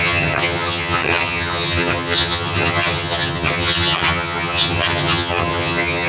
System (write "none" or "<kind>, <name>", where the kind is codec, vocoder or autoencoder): vocoder, HiFi-GAN